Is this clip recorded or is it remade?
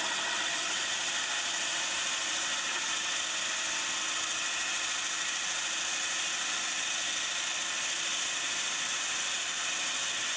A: recorded